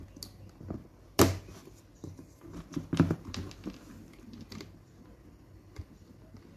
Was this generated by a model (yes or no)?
no